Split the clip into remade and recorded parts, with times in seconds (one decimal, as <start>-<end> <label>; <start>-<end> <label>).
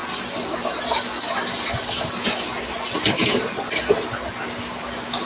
0.0-5.3 recorded